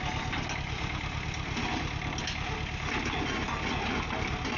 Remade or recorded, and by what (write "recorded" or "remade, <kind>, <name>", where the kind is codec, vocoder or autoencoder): recorded